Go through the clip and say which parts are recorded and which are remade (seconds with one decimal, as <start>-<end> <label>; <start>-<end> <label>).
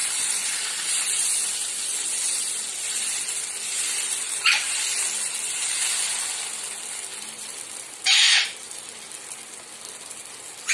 0.0-5.0 remade; 5.0-7.1 recorded; 7.1-8.9 remade; 8.9-10.7 recorded